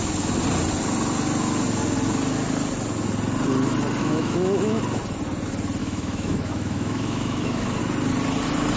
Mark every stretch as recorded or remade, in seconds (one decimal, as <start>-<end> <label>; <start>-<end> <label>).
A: 0.0-4.0 recorded; 4.0-4.8 remade; 4.8-5.8 recorded; 5.8-7.8 remade; 7.8-8.8 recorded